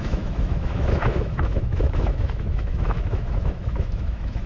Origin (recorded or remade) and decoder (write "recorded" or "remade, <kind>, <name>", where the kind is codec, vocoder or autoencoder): remade, autoencoder, DAC-VAE